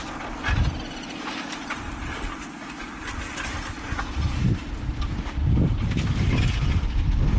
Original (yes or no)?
yes